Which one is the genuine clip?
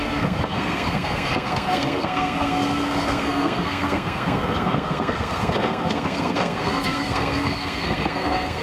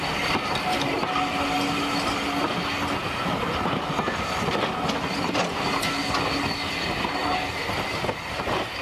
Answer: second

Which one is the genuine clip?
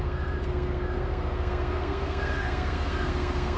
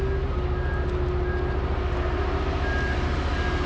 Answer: second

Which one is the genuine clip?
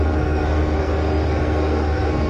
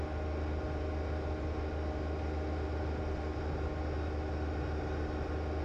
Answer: second